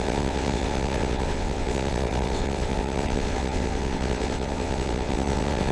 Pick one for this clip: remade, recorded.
remade